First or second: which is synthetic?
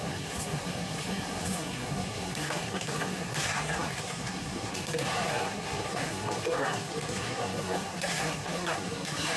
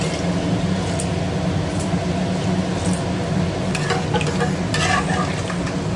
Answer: first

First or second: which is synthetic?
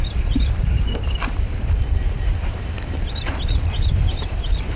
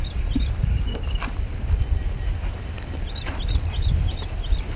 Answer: first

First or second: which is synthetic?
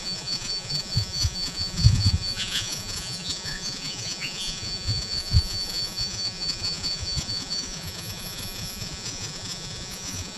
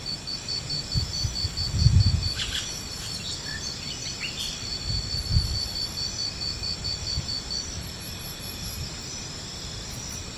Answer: first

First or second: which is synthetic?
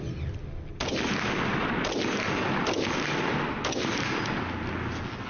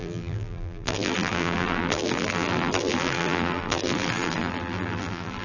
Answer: second